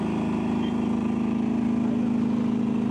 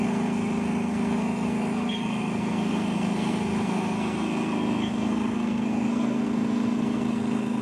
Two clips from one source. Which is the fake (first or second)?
second